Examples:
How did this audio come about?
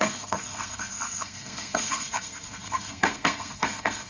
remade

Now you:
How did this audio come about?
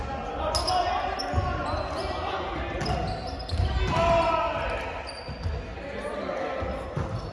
recorded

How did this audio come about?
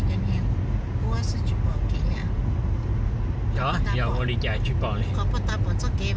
recorded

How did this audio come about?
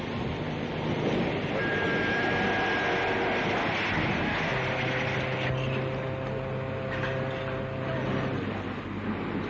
recorded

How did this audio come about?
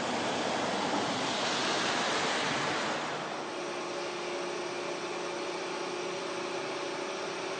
recorded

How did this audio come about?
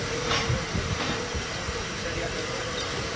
remade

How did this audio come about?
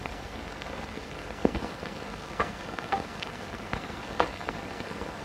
remade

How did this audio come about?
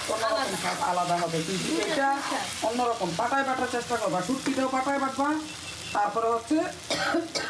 recorded